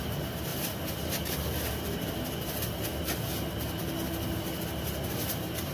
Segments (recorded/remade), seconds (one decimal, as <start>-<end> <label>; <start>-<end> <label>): 0.0-5.7 recorded